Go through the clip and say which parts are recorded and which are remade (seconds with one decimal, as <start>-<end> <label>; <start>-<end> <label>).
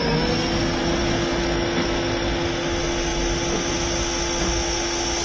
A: 0.0-5.2 recorded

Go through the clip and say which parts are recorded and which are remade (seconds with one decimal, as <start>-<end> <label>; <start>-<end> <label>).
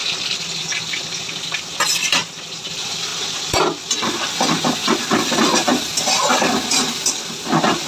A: 0.0-7.9 recorded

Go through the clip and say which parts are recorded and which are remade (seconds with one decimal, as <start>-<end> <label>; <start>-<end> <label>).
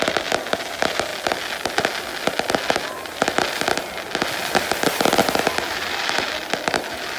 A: 0.0-7.2 recorded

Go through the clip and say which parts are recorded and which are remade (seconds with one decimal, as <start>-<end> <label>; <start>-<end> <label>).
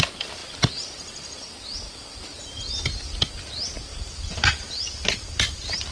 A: 0.0-5.9 recorded